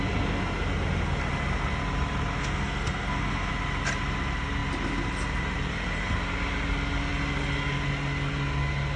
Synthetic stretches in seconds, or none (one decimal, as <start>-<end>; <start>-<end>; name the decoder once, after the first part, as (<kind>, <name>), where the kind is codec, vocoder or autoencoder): 2.4-3.5 (codec, SNAC)

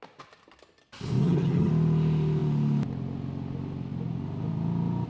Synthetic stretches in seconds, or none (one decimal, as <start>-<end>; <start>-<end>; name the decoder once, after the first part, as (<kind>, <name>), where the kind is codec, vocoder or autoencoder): 1.2-1.7 (vocoder, HiFi-GAN)

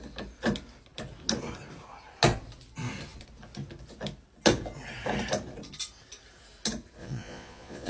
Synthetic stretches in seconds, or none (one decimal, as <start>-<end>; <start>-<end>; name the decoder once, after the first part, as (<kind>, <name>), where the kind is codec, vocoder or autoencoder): 7.0-7.9 (vocoder, Vocos)